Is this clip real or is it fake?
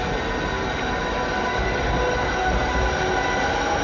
real